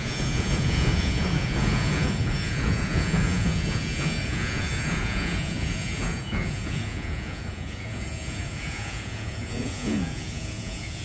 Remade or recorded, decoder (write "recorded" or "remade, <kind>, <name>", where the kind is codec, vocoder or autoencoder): remade, vocoder, Vocos